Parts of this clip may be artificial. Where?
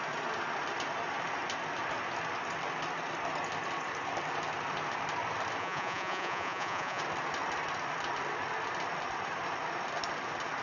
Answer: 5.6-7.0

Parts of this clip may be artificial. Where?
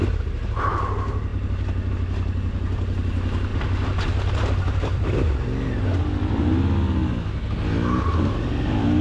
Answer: 3.5-5.3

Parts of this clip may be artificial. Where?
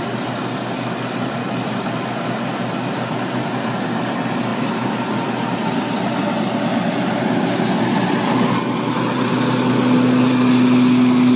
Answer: none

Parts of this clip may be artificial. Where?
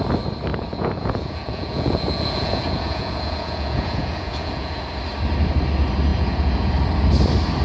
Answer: 0.5-5.0; 6.1-6.7